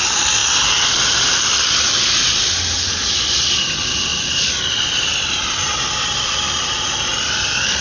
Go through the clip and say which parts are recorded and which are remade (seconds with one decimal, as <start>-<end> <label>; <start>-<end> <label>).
0.0-4.1 recorded; 4.1-6.8 remade; 6.8-7.8 recorded